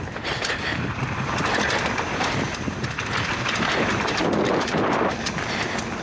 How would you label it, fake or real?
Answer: real